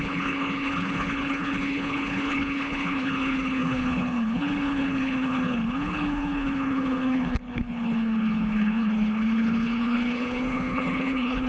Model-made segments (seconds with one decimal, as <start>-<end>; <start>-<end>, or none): 0.0-11.5